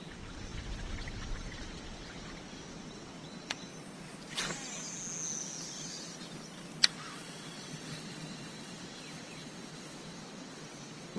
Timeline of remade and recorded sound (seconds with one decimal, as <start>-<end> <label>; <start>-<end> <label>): 0.0-3.7 remade; 3.7-6.9 recorded; 6.9-11.2 remade

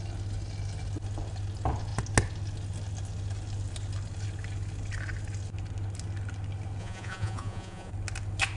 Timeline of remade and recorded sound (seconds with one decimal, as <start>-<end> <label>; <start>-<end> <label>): 0.0-6.8 recorded; 6.8-7.9 remade; 7.9-8.6 recorded

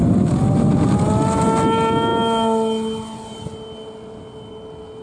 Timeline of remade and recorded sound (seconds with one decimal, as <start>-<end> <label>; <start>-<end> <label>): 0.0-5.0 recorded

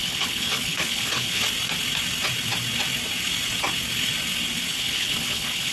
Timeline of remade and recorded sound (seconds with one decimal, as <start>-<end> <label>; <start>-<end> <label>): 0.0-1.4 remade; 1.4-4.7 recorded; 4.7-5.7 remade

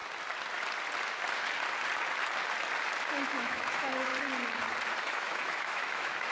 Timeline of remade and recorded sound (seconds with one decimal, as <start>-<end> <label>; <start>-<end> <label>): 0.0-3.1 recorded; 3.1-4.1 remade; 4.1-5.0 recorded; 5.0-6.3 remade

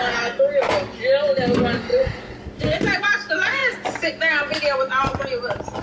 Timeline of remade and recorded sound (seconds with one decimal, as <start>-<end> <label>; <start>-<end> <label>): 0.0-5.8 recorded

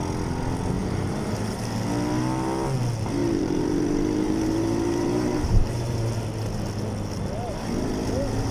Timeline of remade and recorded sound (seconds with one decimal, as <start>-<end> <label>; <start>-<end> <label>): 0.0-0.8 recorded; 0.8-1.5 remade; 1.5-3.2 recorded; 3.2-6.1 remade; 6.1-8.5 recorded

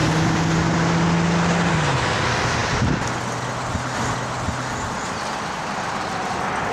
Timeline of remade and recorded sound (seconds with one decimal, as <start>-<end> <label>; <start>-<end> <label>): 0.0-6.7 recorded